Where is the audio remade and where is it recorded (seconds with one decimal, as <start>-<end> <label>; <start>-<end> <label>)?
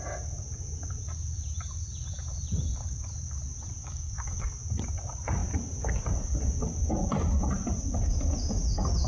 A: 0.0-3.8 recorded; 3.8-4.4 remade; 4.4-9.1 recorded